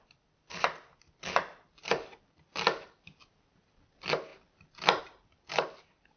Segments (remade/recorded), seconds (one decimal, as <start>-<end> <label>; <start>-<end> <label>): 0.0-6.2 recorded